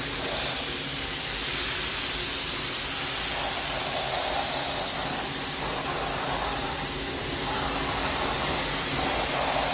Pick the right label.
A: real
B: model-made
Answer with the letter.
A